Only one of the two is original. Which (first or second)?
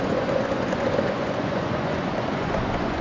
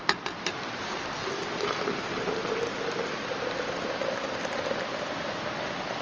second